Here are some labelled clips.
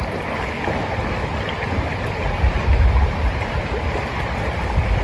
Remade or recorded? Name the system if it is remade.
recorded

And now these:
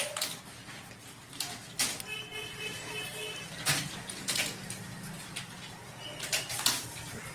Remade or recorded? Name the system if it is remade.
recorded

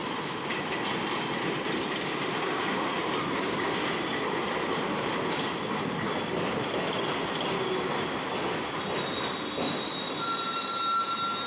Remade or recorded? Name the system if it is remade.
recorded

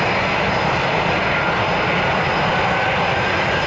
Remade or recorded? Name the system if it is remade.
recorded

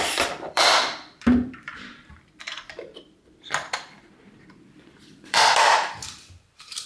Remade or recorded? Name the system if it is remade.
remade, vocoder, BigVGAN v2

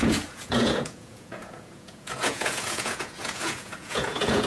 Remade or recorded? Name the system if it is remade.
remade, vocoder, Vocos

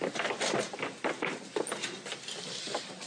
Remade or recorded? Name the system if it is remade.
recorded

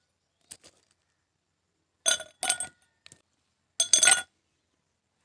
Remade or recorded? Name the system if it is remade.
recorded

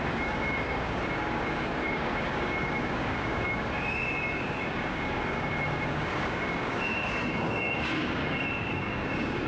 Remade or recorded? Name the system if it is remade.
remade, codec, DAC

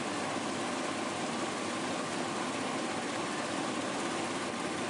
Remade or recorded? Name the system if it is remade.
recorded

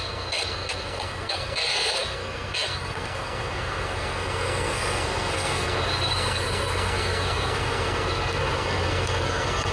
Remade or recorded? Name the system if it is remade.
remade, codec, SNAC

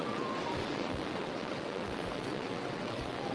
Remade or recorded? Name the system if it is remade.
remade, vocoder, WaveNeXt